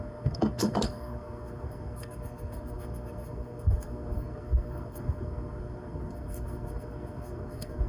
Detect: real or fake fake